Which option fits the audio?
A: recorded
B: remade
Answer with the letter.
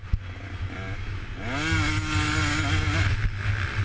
A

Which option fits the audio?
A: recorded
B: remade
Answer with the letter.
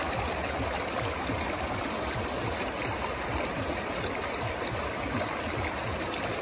A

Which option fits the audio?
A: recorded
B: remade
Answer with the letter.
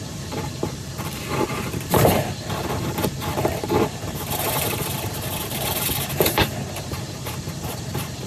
B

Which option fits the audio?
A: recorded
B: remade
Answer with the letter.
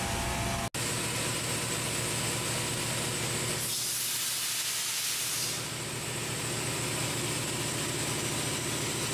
A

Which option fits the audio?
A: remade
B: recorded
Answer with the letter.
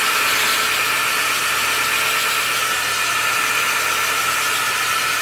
B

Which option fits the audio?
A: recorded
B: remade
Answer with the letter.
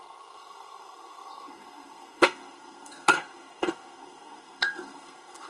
B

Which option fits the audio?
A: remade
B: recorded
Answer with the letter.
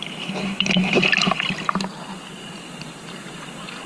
B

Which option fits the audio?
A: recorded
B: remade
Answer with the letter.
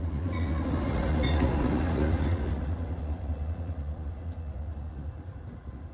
B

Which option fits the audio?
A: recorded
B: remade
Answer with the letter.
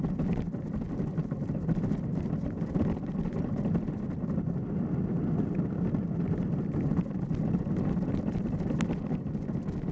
A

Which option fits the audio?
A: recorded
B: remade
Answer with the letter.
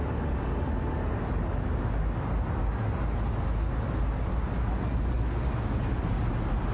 A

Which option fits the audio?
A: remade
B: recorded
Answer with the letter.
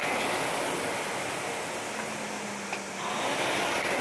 B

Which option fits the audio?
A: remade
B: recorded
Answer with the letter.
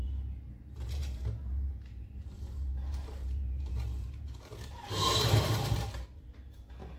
A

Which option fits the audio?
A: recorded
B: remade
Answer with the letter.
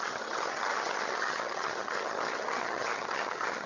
B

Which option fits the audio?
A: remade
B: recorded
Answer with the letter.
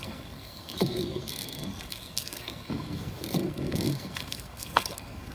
A